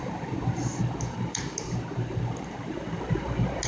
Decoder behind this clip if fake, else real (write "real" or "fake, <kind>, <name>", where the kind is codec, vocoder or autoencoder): fake, vocoder, BigVGAN v2